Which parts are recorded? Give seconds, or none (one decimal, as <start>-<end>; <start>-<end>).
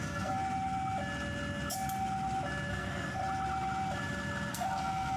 0.4-2.7; 3.2-4.5